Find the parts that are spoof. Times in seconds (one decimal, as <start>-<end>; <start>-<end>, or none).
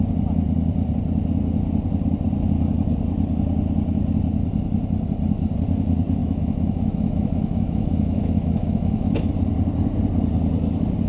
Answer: 6.2-9.3